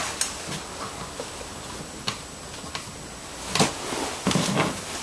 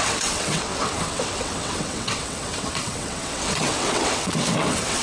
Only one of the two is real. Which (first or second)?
first